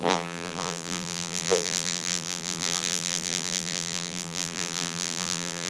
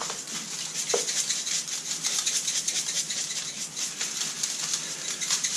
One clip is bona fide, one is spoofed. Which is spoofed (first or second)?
first